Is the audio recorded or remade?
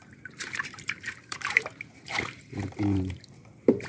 remade